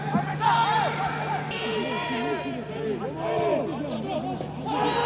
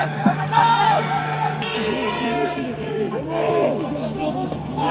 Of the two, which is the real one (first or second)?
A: first